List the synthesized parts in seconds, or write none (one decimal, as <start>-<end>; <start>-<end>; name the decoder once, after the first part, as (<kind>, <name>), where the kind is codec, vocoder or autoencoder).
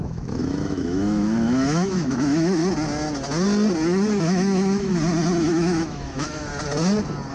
0.0-2.6 (autoencoder, DAC-VAE); 4.2-4.9; 5.5-6.5